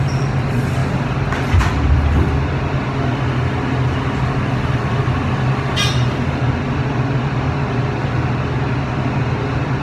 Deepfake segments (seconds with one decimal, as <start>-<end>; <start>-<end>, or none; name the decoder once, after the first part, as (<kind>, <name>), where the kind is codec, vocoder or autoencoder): none